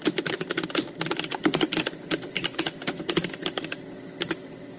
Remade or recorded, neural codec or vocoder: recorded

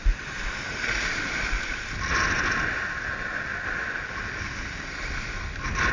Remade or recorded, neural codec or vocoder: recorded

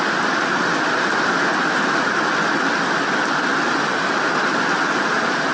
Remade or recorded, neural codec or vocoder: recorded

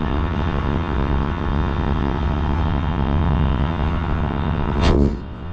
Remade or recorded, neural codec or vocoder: remade, vocoder, WaveNeXt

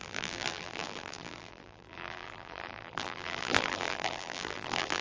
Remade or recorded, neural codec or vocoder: remade, vocoder, BigVGAN v2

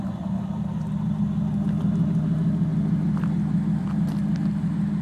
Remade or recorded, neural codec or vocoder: recorded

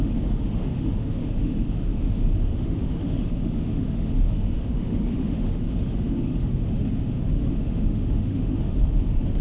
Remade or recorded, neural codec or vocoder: remade, autoencoder, DAC-VAE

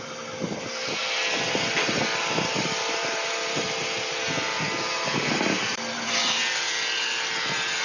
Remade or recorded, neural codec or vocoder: remade, vocoder, BigVGAN v2